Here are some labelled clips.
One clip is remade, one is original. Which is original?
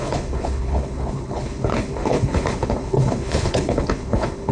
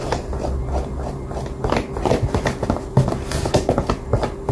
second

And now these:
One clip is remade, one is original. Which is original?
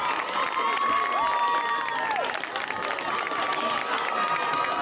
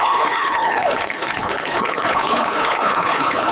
first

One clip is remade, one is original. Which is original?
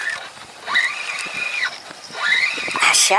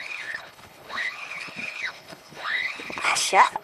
first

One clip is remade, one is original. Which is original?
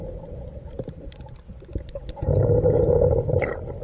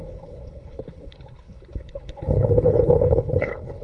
first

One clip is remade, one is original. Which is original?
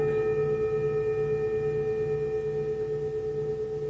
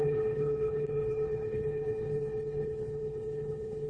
first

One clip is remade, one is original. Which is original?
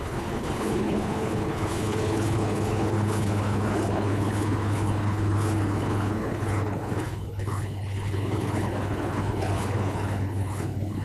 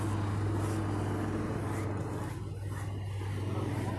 second